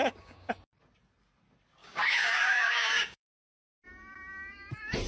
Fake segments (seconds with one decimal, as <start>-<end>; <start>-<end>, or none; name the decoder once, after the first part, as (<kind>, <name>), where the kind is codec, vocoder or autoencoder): 0.0-0.5 (codec, DAC); 1.8-3.7